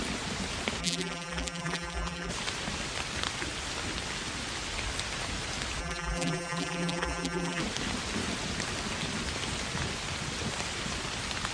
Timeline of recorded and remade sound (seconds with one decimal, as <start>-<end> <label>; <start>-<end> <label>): 0.0-0.8 recorded; 0.8-2.3 remade; 2.3-5.8 recorded; 5.8-7.6 remade; 7.6-11.5 recorded